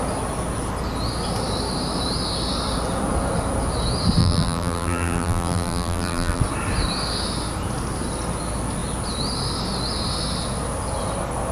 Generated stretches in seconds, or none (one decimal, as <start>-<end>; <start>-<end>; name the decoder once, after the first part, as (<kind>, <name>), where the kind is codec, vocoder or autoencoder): 4.2-6.4 (vocoder, BigVGAN v2)